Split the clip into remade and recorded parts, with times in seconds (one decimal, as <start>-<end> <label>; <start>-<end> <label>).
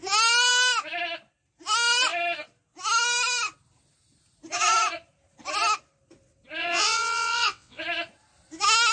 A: 0.0-6.6 recorded; 6.6-7.8 remade; 7.8-8.9 recorded